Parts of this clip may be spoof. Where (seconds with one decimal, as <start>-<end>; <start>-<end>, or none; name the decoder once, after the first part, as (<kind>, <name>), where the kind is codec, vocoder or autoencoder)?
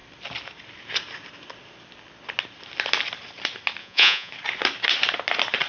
3.8-4.3 (vocoder, Vocos)